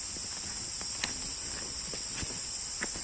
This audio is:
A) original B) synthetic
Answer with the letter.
A